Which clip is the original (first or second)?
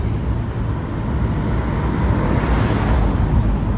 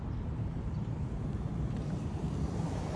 first